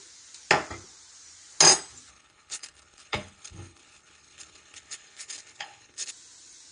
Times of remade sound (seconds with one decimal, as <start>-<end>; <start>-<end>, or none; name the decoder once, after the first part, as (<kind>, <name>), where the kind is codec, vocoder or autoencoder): 2.1-6.1 (codec, HILCodec)